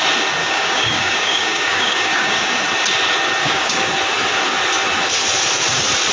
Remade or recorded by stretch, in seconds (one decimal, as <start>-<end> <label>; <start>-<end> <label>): 0.0-0.4 recorded; 0.4-2.5 remade; 2.5-3.4 recorded; 3.4-3.9 remade; 3.9-6.1 recorded